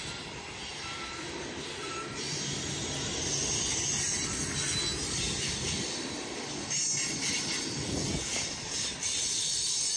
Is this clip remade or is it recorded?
recorded